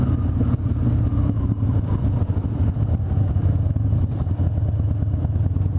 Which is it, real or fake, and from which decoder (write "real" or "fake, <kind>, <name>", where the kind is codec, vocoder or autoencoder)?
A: real